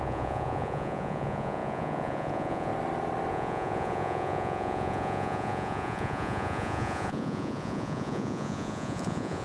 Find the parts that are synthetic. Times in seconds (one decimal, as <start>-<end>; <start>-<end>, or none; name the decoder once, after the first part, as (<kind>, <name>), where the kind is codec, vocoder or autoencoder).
0.0-2.7 (vocoder, Vocos); 3.3-9.4

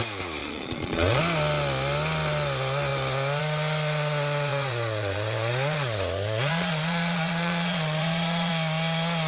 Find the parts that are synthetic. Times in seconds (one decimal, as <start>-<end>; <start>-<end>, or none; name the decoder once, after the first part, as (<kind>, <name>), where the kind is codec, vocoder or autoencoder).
0.4-1.2 (vocoder, Vocos); 4.5-8.5

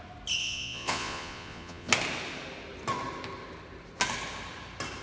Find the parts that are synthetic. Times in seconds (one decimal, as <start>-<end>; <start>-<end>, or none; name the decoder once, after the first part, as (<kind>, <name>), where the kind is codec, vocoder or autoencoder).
0.4-1.9 (vocoder, Vocos)

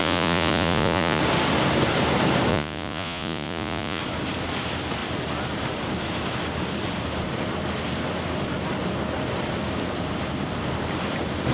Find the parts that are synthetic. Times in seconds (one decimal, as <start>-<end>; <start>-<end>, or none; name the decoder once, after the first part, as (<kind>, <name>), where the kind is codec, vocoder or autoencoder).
0.0-1.2 (vocoder, Vocos); 2.5-4.0

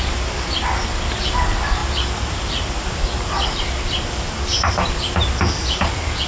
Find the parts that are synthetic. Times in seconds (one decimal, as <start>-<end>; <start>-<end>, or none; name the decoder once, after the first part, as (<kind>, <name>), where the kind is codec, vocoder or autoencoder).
none

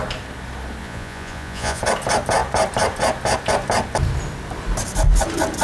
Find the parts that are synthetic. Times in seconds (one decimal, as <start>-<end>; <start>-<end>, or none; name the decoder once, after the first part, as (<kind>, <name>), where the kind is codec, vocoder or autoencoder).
0.8-1.8 (vocoder, Vocos)

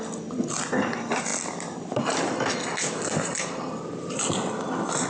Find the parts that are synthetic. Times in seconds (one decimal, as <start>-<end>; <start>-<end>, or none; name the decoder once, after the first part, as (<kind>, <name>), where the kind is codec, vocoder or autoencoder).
none

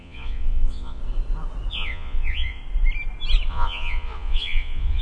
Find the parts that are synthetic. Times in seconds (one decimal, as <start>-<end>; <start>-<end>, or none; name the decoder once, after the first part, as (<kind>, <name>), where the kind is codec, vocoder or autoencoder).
0.0-1.0 (vocoder, Vocos); 1.7-2.6; 3.5-5.0